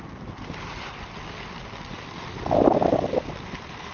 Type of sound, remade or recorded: recorded